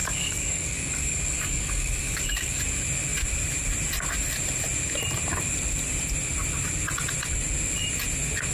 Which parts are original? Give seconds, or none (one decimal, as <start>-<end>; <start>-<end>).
2.6-8.5